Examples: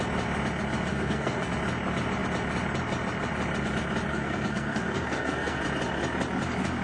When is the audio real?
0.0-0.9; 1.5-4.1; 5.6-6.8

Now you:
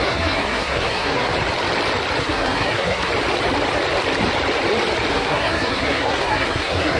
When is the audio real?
1.3-2.2; 3.1-5.1

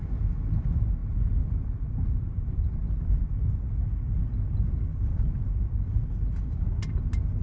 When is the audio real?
0.0-1.0; 3.2-4.9; 5.5-7.4

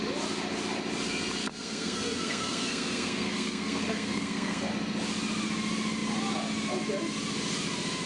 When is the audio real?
0.0-1.4; 4.7-8.1

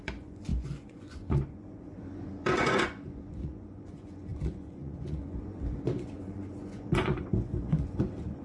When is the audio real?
none

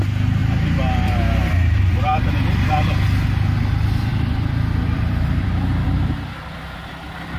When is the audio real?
0.0-0.4; 1.1-4.1; 6.8-7.4

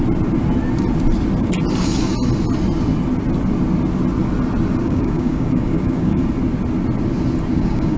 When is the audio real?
0.0-4.8; 6.2-7.6